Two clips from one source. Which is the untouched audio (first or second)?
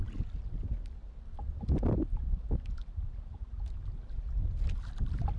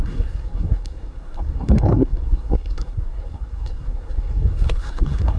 first